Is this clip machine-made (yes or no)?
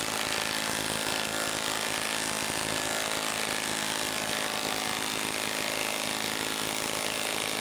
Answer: no